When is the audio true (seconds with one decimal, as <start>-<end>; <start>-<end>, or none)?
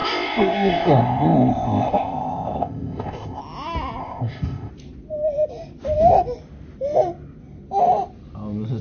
3.4-4.0; 4.7-8.8